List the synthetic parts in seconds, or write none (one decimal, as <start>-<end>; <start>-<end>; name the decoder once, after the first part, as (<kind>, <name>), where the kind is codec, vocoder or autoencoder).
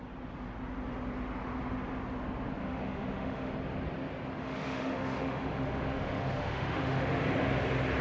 2.6-3.5 (autoencoder, DAC-VAE); 4.4-7.2